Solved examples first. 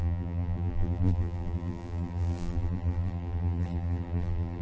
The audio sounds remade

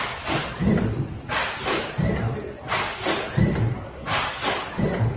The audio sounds recorded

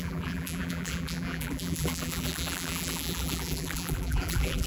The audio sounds remade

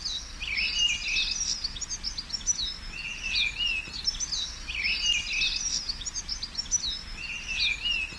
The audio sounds recorded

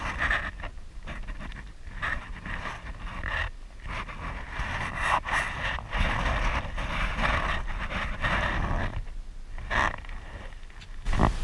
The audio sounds recorded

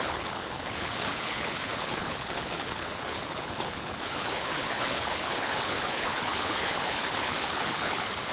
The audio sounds remade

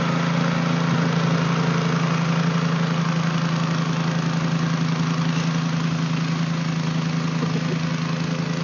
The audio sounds recorded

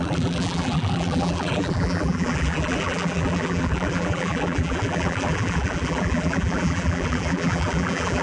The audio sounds remade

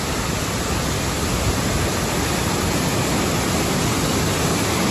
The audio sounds recorded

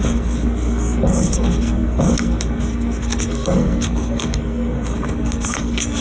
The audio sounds remade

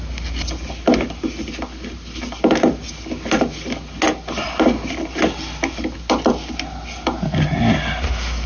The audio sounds recorded